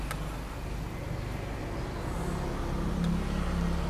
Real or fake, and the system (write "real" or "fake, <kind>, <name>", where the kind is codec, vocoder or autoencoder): real